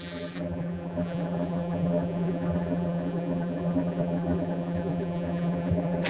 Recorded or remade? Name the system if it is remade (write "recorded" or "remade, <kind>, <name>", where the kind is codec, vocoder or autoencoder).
remade, vocoder, BigVGAN v2